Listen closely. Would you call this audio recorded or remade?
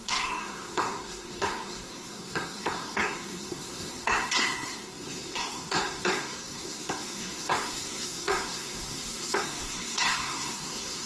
remade